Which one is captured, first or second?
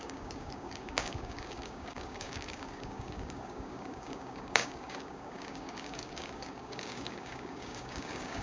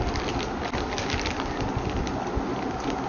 second